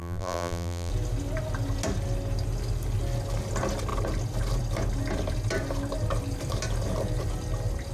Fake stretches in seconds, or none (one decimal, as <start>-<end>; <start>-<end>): 0.0-0.9